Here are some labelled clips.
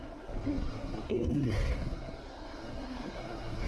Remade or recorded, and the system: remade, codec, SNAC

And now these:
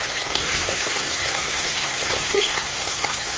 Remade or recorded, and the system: remade, codec, SNAC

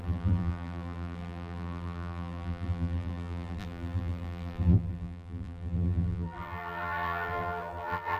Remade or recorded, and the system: remade, vocoder, BigVGAN v2